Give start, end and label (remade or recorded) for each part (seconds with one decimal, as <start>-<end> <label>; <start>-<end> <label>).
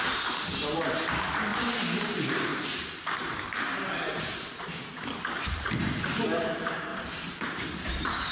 0.0-8.3 remade